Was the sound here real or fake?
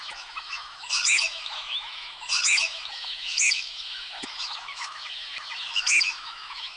fake